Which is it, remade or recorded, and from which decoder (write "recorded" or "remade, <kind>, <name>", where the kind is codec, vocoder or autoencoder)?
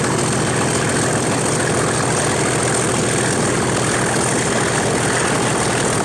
recorded